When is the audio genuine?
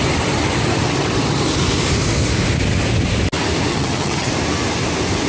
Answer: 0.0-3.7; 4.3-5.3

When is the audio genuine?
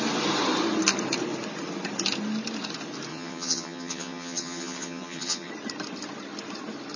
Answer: 0.0-3.1; 5.5-7.0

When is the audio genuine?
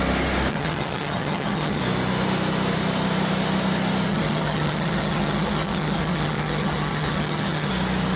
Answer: 0.0-0.5; 1.8-4.1; 7.7-8.2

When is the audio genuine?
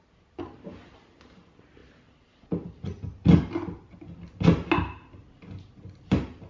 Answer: 0.0-6.5